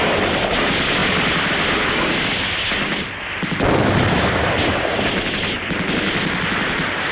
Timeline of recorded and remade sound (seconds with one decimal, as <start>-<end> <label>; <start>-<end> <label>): 0.0-7.1 recorded